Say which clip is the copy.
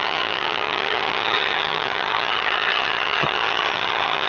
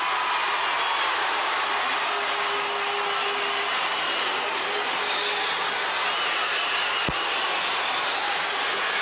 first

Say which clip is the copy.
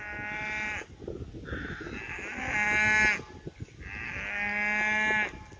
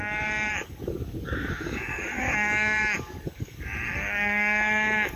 second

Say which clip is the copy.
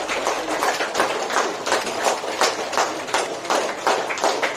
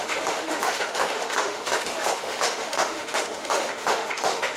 second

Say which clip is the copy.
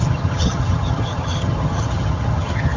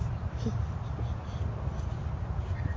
first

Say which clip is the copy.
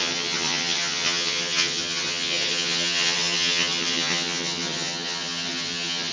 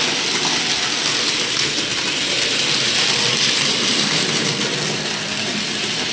first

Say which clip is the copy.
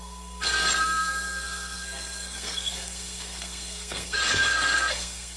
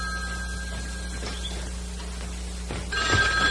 first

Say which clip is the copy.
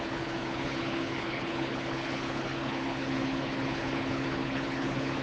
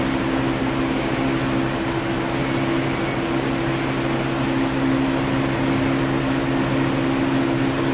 first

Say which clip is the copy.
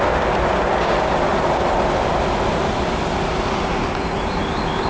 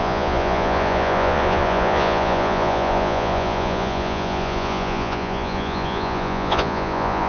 second